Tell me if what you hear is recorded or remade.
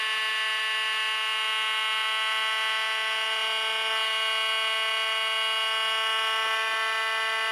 recorded